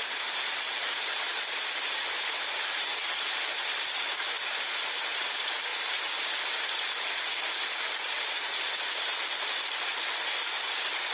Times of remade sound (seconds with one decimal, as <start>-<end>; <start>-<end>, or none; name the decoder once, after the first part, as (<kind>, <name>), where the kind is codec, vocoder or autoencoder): 0.0-2.9 (vocoder, BigVGAN v2); 5.2-5.7; 10.4-11.1